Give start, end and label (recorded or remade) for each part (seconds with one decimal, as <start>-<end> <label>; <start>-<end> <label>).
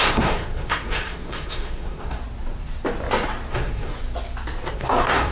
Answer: 0.0-2.2 remade; 2.2-3.5 recorded; 3.5-3.9 remade; 3.9-4.7 recorded; 4.7-5.3 remade